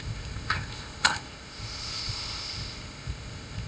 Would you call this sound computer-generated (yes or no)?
yes